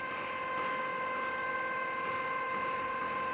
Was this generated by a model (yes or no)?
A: no